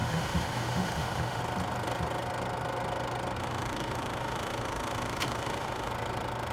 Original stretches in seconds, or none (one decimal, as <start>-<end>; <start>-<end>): 1.4-3.4; 5.9-6.5